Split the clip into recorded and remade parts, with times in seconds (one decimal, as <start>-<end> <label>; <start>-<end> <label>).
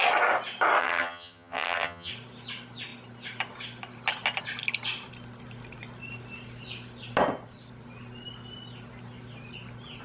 0.0-0.8 recorded; 0.8-2.1 remade; 2.1-10.0 recorded